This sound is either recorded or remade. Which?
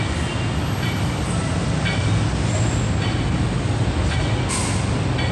recorded